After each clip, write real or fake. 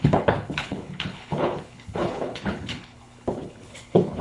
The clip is fake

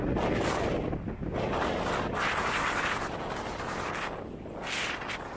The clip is real